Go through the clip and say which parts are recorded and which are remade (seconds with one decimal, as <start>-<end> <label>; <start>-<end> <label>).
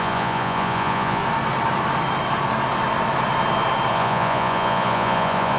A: 0.0-1.2 remade; 1.2-3.9 recorded; 3.9-5.6 remade